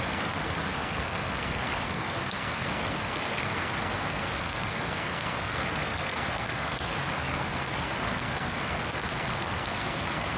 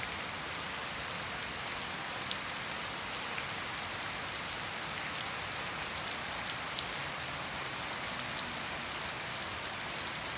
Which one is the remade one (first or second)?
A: first